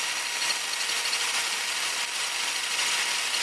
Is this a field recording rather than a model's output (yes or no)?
yes